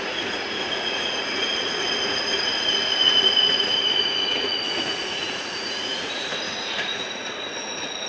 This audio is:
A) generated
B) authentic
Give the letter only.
A